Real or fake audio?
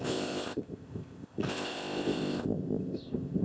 fake